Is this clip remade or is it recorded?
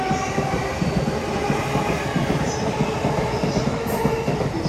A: recorded